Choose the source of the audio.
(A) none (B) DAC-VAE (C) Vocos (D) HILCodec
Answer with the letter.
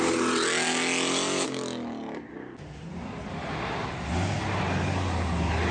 A